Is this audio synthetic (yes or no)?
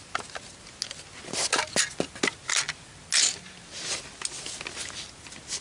no